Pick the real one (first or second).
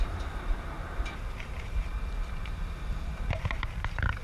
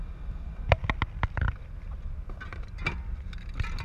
second